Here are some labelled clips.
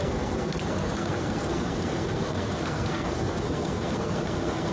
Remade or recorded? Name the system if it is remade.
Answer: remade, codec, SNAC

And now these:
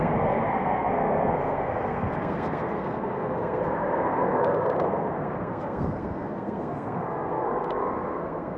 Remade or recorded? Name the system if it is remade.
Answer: remade, codec, SNAC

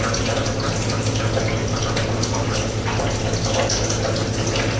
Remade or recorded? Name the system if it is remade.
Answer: recorded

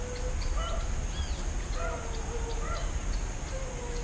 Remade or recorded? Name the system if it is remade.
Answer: recorded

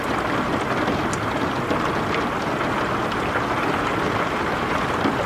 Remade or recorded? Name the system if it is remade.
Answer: recorded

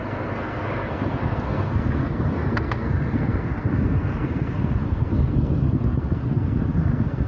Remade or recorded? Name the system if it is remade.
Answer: remade, codec, SNAC